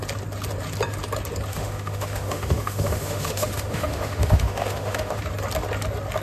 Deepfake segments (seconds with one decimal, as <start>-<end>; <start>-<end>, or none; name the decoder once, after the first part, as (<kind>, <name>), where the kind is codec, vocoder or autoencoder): 1.5-5.2 (autoencoder, DAC-VAE)

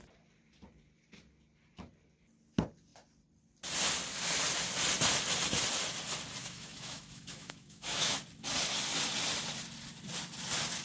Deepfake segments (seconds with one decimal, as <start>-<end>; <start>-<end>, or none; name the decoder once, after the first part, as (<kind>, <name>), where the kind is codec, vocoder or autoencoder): 6.4-8.2 (autoencoder, DAC-VAE)

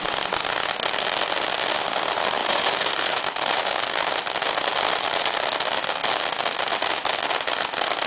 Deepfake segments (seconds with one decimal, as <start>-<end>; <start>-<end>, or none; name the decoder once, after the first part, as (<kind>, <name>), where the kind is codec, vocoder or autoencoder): 2.4-3.6 (vocoder, BigVGAN v2)